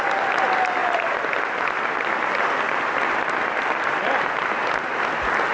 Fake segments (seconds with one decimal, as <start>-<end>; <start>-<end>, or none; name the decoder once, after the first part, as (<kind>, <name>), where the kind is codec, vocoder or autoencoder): 0.8-4.1 (vocoder, BigVGAN v2)